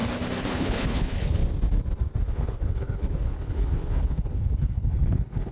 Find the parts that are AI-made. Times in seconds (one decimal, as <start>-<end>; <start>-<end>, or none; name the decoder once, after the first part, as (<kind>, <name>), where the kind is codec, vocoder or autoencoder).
0.5-1.4 (codec, HILCodec); 2.2-5.5